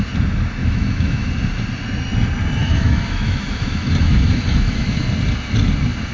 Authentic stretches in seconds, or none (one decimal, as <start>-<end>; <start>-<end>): 0.0-0.6; 1.3-2.6; 5.0-6.1